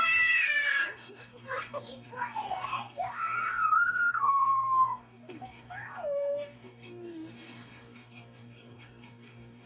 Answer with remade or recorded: remade